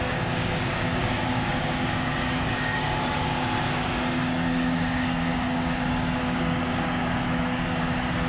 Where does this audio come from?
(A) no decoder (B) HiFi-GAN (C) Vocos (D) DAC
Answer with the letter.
D